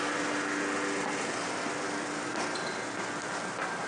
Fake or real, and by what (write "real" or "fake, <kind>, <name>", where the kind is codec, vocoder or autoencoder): real